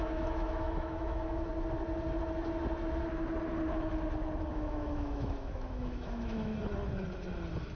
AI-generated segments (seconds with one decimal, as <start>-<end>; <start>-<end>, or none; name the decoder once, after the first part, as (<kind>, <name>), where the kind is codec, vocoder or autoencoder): 0.0-1.5 (autoencoder, DAC-VAE); 4.5-6.5